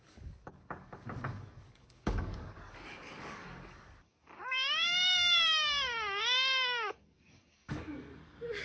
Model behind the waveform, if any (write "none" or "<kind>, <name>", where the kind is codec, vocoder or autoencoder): codec, DAC